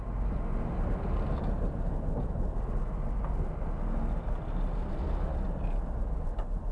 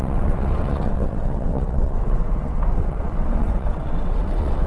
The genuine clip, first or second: first